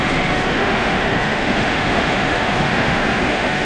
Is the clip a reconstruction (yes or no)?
yes